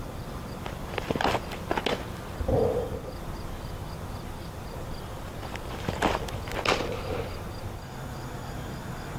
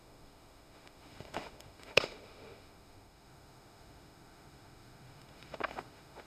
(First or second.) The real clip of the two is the first